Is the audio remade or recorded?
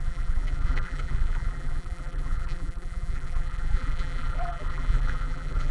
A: remade